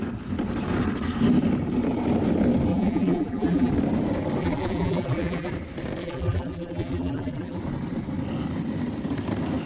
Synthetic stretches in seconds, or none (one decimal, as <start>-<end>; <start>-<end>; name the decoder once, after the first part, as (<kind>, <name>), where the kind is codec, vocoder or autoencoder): 2.7-3.7 (vocoder, BigVGAN v2); 4.4-5.5; 6.0-7.6